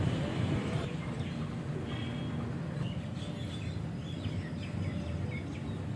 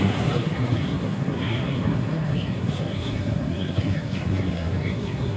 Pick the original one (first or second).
first